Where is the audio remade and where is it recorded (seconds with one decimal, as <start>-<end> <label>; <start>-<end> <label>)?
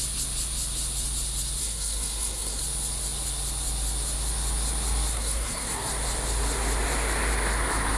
0.0-1.6 recorded; 1.6-2.6 remade; 2.6-5.1 recorded; 5.1-5.9 remade; 5.9-8.0 recorded